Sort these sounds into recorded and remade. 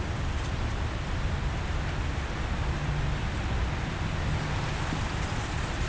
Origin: recorded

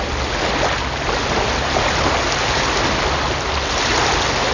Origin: recorded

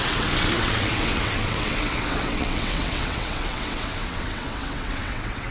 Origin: remade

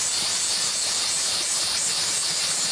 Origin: recorded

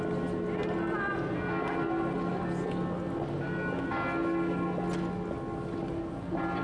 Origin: recorded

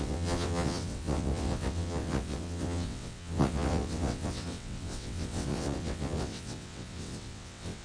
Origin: remade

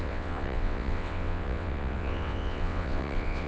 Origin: remade